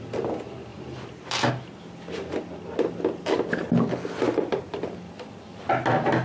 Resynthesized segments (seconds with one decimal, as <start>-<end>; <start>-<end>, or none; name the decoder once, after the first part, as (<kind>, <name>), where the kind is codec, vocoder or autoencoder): 0.7-1.5 (vocoder, BigVGAN v2)